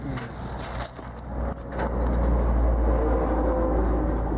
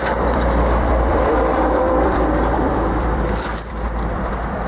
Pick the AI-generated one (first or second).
second